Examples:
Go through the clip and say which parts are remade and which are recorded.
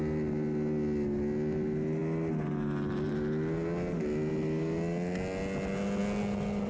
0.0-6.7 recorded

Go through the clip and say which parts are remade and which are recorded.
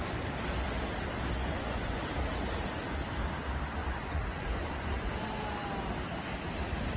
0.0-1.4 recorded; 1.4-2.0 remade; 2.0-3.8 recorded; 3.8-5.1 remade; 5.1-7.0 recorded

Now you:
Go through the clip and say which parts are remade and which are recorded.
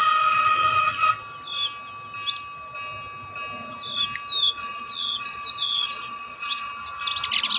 0.0-1.1 remade; 1.1-4.6 recorded; 4.6-6.7 remade; 6.7-7.6 recorded